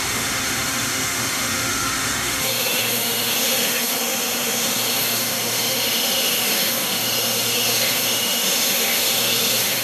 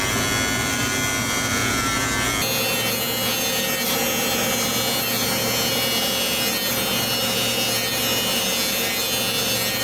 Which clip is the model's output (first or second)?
first